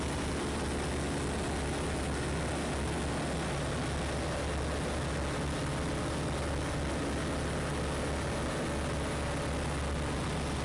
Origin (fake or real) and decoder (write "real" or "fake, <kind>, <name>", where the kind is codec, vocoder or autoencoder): real